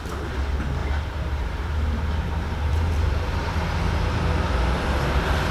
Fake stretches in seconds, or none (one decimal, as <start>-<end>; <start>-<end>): 0.8-3.5

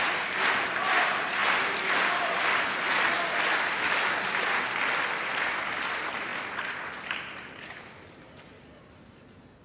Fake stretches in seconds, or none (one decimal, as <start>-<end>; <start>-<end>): none

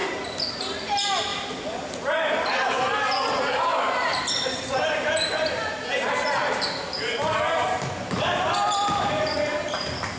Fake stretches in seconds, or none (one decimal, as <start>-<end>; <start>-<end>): 0.0-0.6; 1.3-2.1; 3.7-6.1

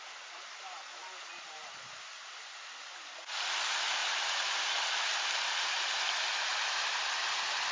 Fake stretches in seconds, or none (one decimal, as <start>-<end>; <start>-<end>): 4.0-4.5

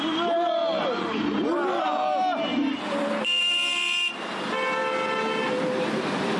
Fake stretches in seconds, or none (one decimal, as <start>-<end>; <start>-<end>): 2.5-3.1

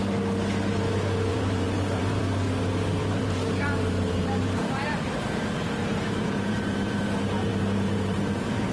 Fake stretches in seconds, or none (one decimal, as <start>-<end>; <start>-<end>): 1.3-2.2; 3.0-5.5; 5.9-7.0; 7.5-8.7

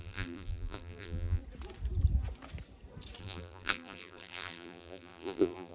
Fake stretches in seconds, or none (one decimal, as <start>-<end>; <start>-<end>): 0.0-1.4; 3.2-5.7

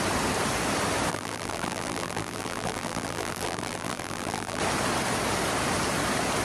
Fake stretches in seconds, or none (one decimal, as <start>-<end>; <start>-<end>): 1.1-4.6